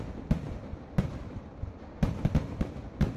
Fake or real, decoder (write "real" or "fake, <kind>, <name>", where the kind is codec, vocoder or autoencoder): real